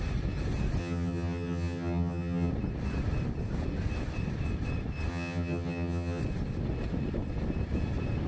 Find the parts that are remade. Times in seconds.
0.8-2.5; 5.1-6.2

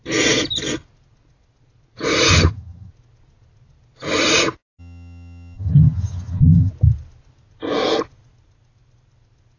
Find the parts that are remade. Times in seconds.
2.3-2.9; 4.8-6.7

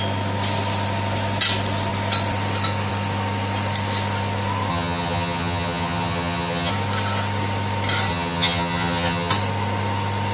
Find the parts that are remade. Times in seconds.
4.7-6.7; 8.1-9.3

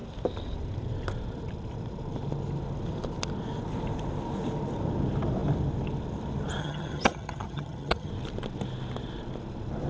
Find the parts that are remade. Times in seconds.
6.6-8.1